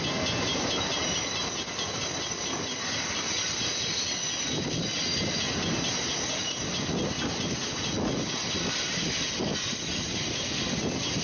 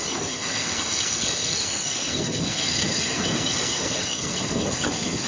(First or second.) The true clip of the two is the first